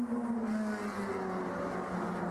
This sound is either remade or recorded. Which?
recorded